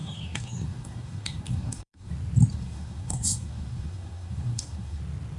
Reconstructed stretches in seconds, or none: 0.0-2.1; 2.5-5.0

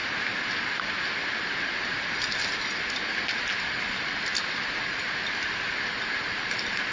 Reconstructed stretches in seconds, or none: none

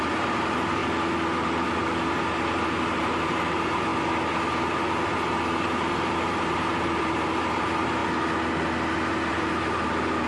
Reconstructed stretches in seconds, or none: 0.0-0.8; 2.1-3.9; 5.1-8.0; 9.3-10.3

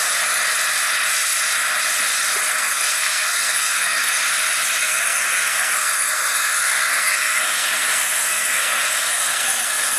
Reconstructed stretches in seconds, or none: 2.5-4.2; 4.8-10.0

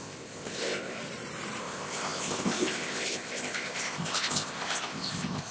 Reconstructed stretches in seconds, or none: 0.0-1.0; 1.6-5.5

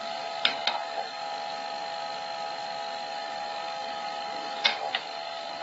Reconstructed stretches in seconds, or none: 0.0-1.2; 3.1-5.6